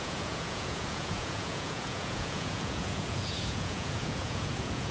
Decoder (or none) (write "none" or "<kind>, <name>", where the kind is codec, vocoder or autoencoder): vocoder, Vocos